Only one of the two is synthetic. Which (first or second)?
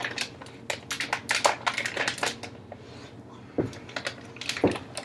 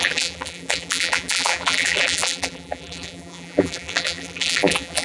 second